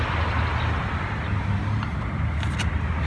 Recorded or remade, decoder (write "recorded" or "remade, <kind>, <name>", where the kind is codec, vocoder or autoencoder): recorded